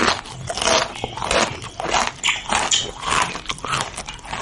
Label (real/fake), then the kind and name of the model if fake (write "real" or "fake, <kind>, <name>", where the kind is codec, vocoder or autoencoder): real